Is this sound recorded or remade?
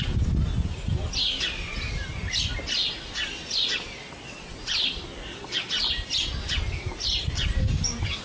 recorded